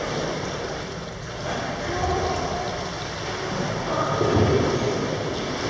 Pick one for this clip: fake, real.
real